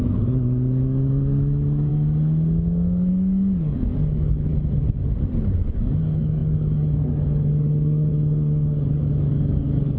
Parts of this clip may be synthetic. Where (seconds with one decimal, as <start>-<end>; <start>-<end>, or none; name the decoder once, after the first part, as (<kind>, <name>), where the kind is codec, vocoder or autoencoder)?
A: 0.0-1.9 (codec, DAC); 3.1-4.5; 5.6-10.0